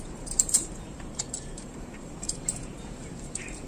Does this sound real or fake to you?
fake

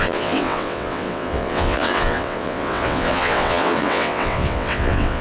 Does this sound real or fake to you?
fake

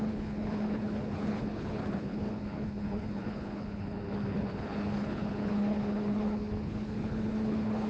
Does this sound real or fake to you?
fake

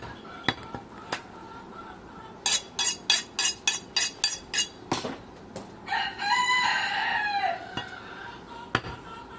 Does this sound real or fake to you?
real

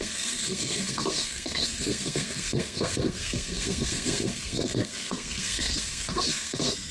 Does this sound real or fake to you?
fake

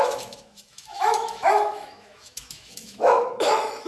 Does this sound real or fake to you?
fake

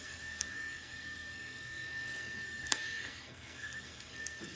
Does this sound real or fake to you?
fake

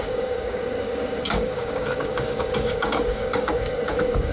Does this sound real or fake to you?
fake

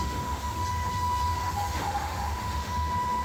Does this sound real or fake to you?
fake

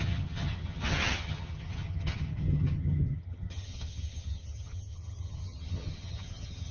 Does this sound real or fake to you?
fake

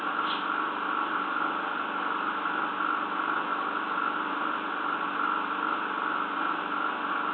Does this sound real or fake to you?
real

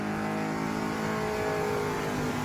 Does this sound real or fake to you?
real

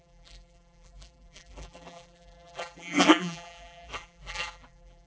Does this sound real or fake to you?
fake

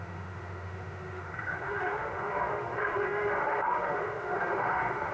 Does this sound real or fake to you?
fake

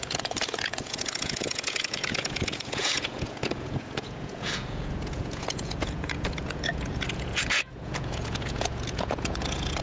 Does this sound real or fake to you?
fake